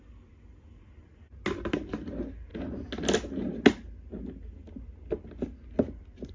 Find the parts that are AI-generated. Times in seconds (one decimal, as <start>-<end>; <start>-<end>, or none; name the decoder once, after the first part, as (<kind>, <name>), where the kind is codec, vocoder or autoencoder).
none